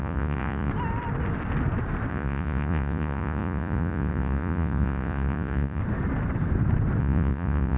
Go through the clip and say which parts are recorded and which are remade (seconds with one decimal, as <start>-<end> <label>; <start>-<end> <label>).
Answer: 0.0-0.7 remade; 0.7-2.1 recorded; 2.1-5.8 remade; 5.8-7.0 recorded; 7.0-7.8 remade